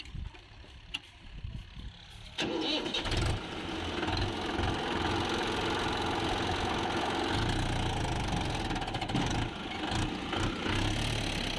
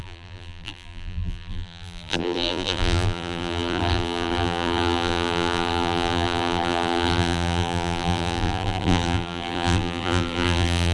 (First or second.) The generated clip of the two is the second